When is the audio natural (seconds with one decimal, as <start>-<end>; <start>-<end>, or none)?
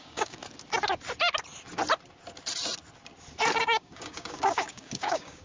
0.4-3.6